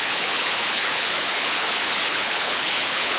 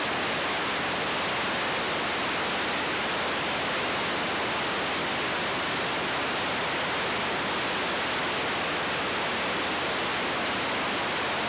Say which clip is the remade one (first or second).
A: first